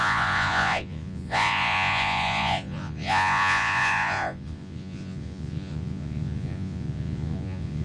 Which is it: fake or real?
fake